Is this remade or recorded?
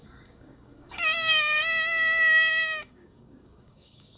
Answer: remade